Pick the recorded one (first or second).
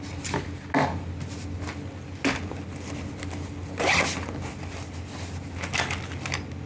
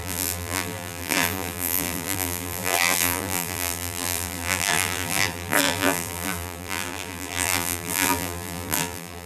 first